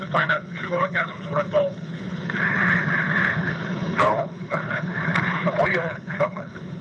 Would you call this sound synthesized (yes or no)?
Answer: yes